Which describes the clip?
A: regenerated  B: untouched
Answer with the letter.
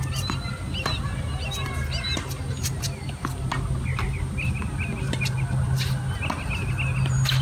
B